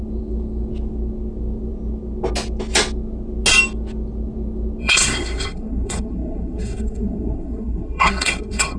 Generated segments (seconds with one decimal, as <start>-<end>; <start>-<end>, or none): 4.8-8.8